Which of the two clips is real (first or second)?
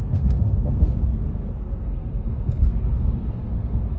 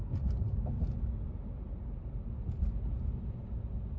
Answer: second